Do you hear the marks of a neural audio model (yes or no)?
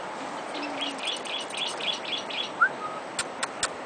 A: no